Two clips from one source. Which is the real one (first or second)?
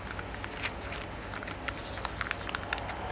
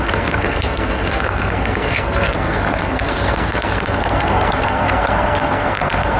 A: first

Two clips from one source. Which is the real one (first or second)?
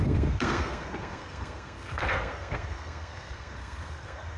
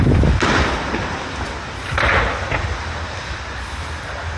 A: second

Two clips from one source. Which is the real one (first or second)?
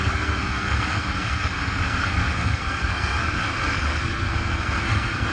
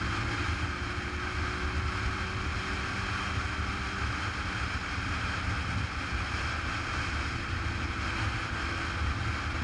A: second